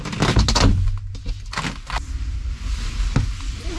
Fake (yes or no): no